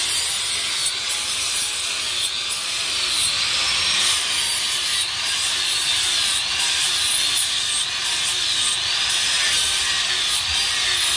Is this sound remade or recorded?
recorded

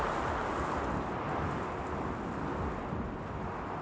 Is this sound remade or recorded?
recorded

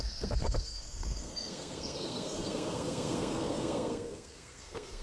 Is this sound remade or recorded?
remade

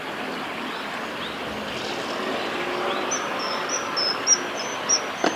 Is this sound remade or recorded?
recorded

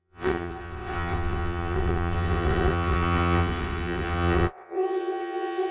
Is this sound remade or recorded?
remade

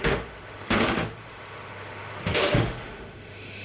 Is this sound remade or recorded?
remade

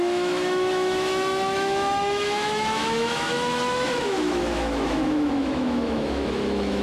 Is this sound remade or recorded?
remade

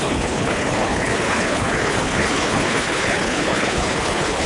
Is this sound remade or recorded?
remade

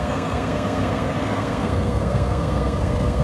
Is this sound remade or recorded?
remade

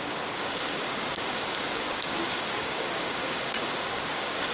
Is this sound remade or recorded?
remade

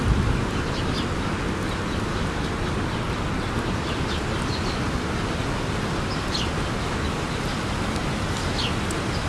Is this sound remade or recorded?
recorded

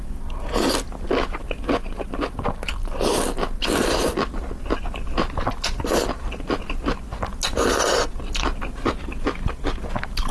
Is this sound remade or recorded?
recorded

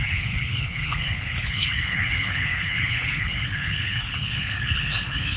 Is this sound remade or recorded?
remade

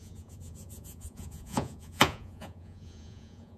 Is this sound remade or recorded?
remade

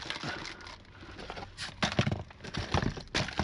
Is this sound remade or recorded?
recorded